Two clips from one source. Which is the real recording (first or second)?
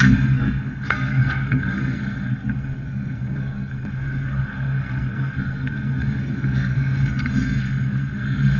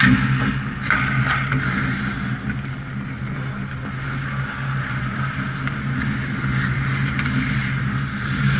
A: second